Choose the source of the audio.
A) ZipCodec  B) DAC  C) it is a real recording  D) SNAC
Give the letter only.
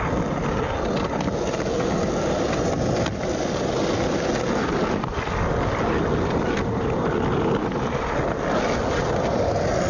C